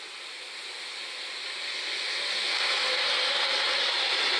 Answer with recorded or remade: recorded